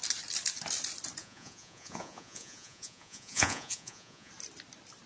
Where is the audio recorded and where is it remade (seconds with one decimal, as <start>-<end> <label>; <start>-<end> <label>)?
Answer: 0.0-1.2 recorded; 1.2-4.3 remade; 4.3-5.1 recorded

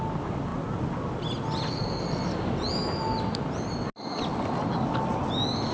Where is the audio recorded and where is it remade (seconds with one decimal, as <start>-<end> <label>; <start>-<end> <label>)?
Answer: 0.0-5.7 recorded